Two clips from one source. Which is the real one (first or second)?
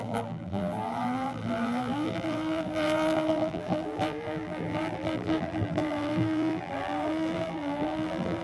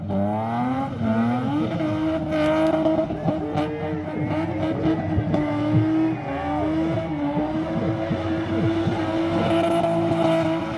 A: second